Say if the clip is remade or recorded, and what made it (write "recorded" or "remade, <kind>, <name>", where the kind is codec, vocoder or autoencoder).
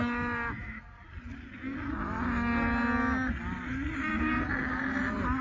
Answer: recorded